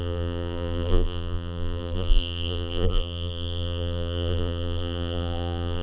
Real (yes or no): no